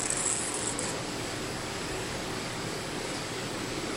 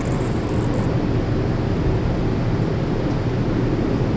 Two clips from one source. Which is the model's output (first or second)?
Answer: first